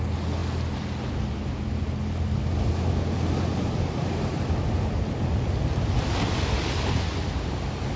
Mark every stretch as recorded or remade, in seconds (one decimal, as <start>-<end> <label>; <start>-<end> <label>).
0.0-8.0 recorded